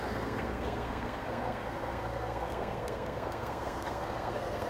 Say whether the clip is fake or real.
fake